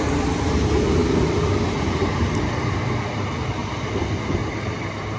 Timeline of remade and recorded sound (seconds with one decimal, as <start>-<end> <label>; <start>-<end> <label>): 0.0-1.0 remade; 1.0-1.9 recorded; 1.9-3.6 remade; 3.6-4.4 recorded; 4.4-5.2 remade